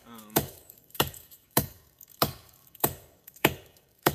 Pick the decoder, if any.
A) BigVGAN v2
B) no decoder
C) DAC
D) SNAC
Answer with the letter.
C